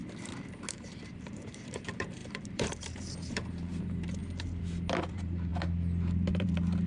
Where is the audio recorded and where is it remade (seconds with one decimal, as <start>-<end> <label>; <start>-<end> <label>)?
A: 0.0-0.7 recorded; 0.7-4.2 remade; 4.2-5.1 recorded; 5.1-5.5 remade; 5.5-6.3 recorded; 6.3-6.9 remade